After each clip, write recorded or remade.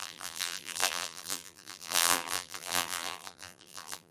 remade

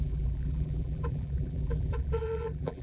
remade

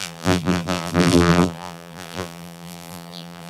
remade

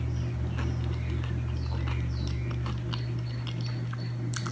recorded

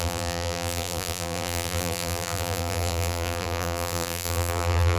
remade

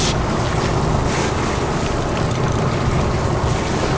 recorded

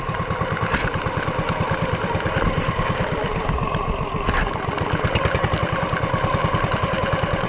remade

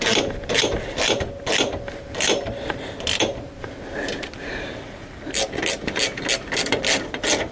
recorded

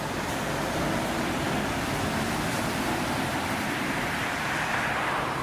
remade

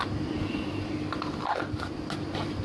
recorded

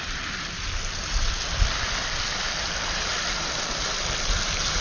remade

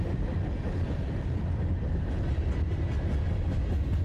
recorded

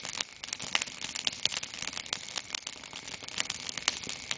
recorded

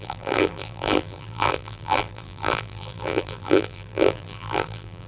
remade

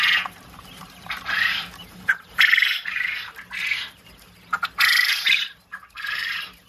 remade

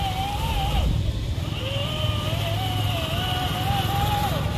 recorded